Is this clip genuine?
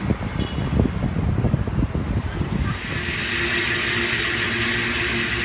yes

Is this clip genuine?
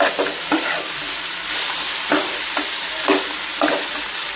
no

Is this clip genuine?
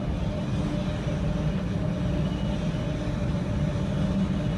yes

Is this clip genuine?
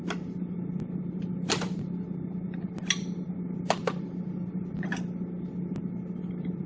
yes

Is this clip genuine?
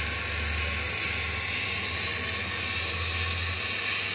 yes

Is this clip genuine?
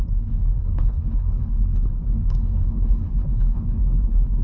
no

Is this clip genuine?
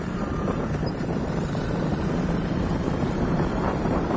no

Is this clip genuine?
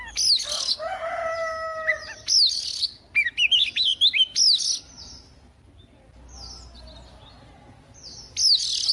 yes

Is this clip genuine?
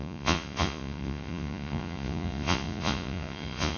no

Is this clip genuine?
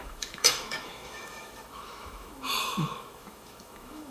no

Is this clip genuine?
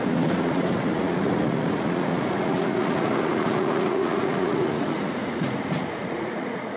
no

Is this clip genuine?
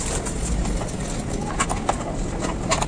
yes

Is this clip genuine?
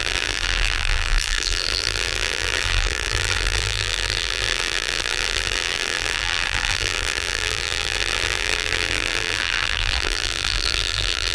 no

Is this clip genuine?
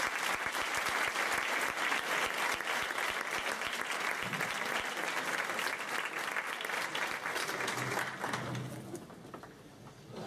yes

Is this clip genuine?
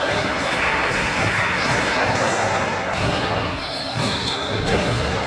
no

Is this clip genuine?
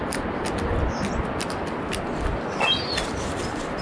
yes